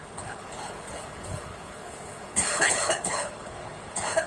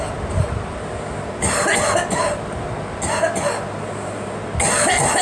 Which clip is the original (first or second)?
second